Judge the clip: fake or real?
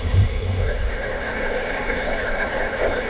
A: fake